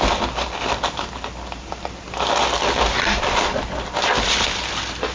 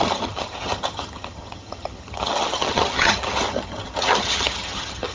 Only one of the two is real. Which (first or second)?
first